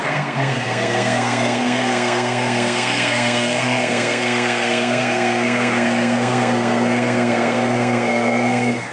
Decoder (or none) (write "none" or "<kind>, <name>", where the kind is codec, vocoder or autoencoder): codec, SNAC